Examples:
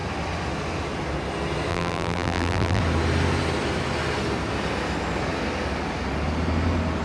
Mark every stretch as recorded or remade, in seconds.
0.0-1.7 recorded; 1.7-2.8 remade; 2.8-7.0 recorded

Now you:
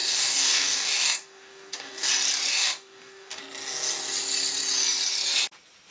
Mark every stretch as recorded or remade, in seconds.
0.0-2.1 remade; 2.1-2.5 recorded; 2.5-3.4 remade; 3.4-5.9 recorded